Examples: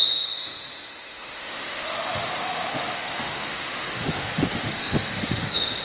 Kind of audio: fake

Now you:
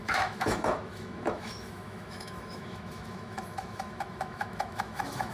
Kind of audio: fake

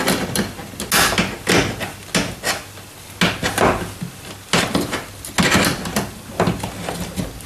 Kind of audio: real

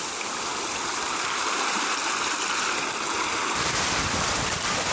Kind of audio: real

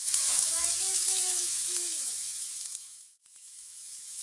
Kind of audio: fake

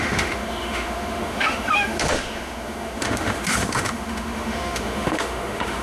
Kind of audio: fake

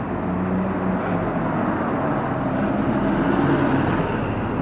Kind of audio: real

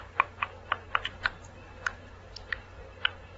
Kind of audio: real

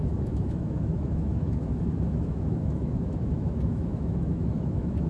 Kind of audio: fake